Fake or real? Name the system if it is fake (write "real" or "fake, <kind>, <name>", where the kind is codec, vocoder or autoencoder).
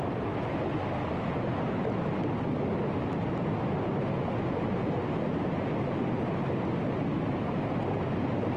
real